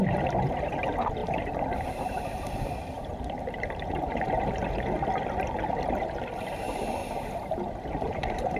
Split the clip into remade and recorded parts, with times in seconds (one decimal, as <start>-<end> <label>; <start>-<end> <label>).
0.0-4.6 remade; 4.6-6.5 recorded; 6.5-7.0 remade; 7.0-7.9 recorded; 7.9-8.6 remade